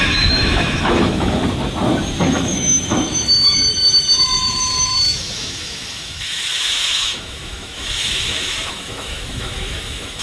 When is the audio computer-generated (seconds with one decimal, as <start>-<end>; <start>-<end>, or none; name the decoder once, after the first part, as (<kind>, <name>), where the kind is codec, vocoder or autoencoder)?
0.0-1.4 (autoencoder, DAC-VAE); 2.3-10.2

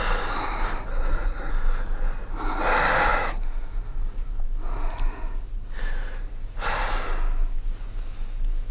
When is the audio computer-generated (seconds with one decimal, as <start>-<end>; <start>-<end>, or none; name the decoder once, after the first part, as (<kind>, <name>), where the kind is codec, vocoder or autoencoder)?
0.9-1.5 (codec, SNAC)

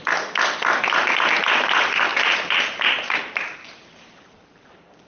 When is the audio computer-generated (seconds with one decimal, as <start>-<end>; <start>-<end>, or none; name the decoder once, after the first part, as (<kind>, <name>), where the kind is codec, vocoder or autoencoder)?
2.1-5.1 (vocoder, BigVGAN v2)

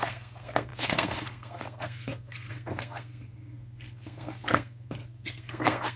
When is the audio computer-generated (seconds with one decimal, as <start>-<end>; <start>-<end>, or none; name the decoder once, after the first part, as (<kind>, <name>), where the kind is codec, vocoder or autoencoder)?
0.0-6.0 (codec, SNAC)

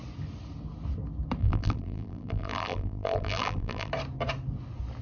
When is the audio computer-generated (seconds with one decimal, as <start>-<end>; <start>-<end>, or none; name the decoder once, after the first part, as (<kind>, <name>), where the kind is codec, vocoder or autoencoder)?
1.4-3.9 (vocoder, BigVGAN v2)

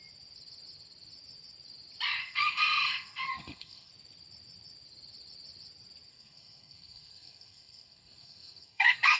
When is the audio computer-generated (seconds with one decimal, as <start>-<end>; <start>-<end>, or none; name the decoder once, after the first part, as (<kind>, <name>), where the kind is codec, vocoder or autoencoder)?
2.2-3.9 (codec, SNAC); 6.1-9.2

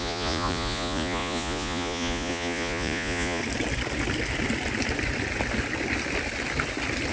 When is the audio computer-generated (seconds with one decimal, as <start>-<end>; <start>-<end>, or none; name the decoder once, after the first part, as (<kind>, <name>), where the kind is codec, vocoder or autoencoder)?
0.0-3.4 (vocoder, Vocos)

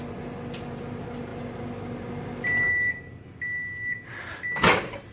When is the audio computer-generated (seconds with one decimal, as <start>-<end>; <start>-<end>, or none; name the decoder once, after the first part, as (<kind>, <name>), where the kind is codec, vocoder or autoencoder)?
none